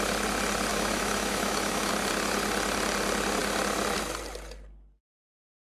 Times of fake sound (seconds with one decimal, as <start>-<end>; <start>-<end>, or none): 0.7-1.9